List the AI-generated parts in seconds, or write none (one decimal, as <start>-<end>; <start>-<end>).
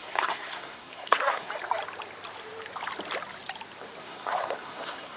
0.0-1.5; 4.0-5.2